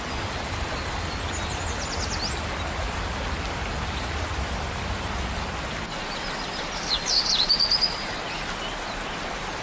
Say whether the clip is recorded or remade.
recorded